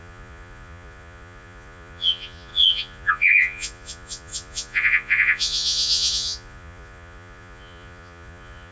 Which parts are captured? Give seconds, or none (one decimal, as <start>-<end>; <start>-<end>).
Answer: none

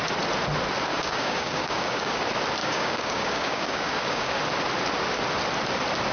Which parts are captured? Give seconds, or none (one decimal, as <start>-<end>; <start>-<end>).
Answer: 0.0-0.9; 2.2-2.6; 4.4-6.1

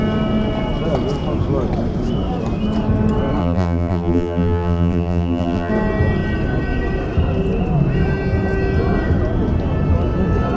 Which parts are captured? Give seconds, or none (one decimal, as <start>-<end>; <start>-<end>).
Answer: 0.0-3.4; 5.7-10.6